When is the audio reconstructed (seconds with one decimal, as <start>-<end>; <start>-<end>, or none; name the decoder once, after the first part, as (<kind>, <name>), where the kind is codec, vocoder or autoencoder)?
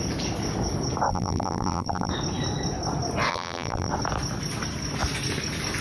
1.1-2.1 (vocoder, BigVGAN v2); 3.3-3.9